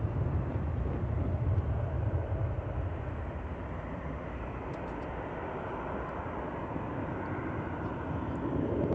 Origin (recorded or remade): recorded